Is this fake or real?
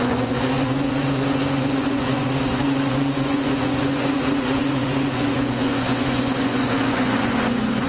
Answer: fake